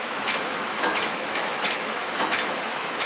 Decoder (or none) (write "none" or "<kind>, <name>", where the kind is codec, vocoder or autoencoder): autoencoder, DAC-VAE